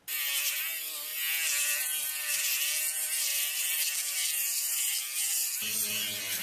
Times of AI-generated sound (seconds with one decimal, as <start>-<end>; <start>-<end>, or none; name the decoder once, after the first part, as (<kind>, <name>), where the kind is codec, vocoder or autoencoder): 3.3-5.2 (vocoder, BigVGAN v2)